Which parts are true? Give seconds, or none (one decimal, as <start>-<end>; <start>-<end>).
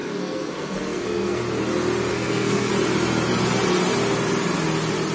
1.4-2.1; 2.7-5.1